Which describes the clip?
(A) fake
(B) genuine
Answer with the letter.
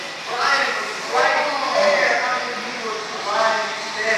B